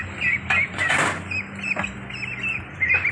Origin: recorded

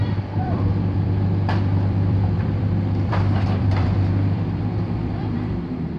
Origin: remade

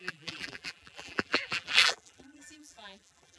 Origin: remade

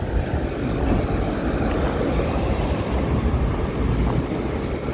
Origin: recorded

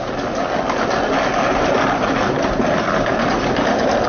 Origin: recorded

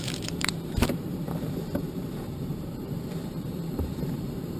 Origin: remade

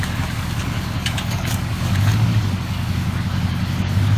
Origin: remade